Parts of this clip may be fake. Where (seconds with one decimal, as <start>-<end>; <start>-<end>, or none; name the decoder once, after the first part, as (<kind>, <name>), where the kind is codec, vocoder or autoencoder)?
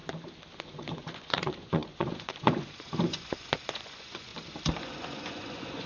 0.6-4.3 (vocoder, Vocos); 4.8-5.9